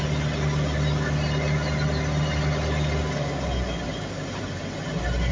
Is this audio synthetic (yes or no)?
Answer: no